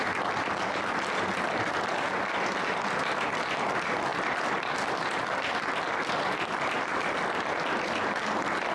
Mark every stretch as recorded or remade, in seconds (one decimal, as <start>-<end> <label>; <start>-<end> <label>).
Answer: 0.0-8.7 recorded